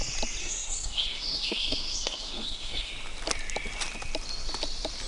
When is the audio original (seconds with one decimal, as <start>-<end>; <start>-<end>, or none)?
0.0-0.4; 2.9-5.1